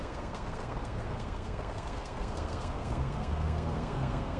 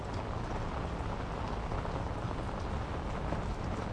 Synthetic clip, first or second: first